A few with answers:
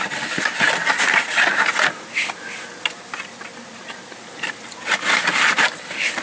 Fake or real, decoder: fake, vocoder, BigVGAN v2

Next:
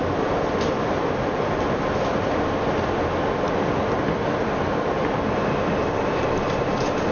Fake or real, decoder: real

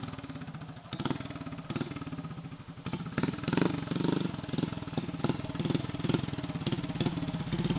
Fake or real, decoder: real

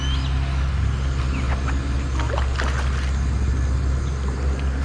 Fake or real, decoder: real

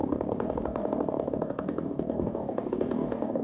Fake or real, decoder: fake, codec, DAC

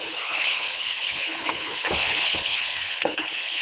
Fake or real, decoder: fake, codec, HILCodec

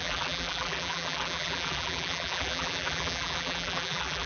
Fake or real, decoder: fake, vocoder, BigVGAN v2